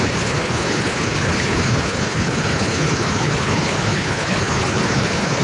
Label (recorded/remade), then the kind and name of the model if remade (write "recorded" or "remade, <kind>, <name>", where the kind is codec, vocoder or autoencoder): remade, codec, HILCodec